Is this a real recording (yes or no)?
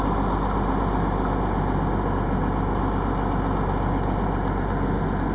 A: yes